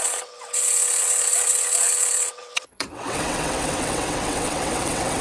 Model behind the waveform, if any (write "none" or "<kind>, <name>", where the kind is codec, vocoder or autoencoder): vocoder, WaveNeXt